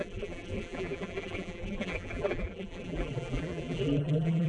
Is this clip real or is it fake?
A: fake